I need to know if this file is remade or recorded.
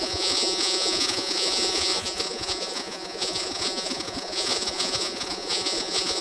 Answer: remade